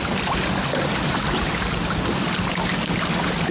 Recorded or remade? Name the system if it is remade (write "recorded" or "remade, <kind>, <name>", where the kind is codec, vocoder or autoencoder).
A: recorded